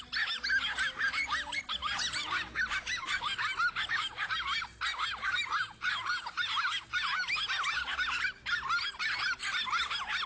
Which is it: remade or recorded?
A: recorded